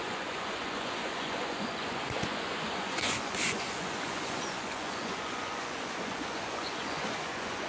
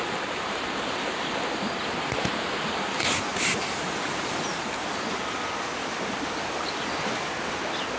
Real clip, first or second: second